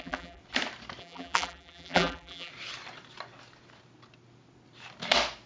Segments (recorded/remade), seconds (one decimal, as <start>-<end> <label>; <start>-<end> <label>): 0.0-0.4 remade; 0.4-1.0 recorded; 1.0-2.5 remade; 2.5-5.5 recorded